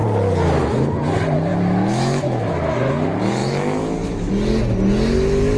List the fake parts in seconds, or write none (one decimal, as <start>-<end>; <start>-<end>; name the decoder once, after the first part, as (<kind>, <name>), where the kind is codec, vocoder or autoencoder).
1.5-2.9 (autoencoder, DAC-VAE); 3.4-4.3